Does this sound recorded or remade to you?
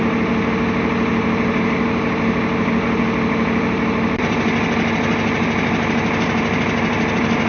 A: recorded